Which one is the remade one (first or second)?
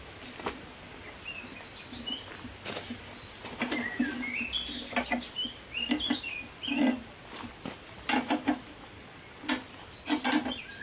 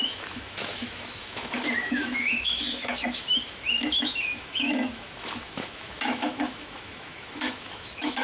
second